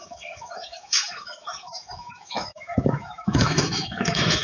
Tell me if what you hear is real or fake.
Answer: fake